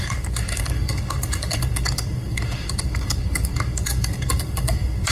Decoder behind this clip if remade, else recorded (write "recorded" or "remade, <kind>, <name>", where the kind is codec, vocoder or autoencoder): remade, codec, DAC